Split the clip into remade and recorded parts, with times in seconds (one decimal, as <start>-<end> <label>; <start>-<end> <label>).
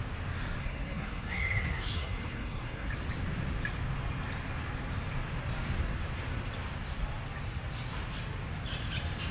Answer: 0.0-0.6 recorded; 0.6-2.9 remade; 2.9-9.3 recorded